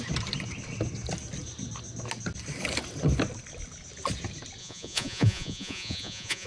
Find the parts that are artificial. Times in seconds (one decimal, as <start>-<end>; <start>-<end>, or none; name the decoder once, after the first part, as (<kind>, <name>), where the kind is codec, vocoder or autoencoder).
4.6-6.5 (vocoder, Vocos)